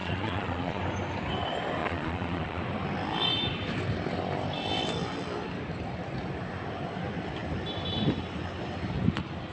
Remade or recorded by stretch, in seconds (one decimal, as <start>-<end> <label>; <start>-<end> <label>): 0.0-0.8 remade; 0.8-1.8 recorded; 1.8-2.6 remade; 2.6-9.5 recorded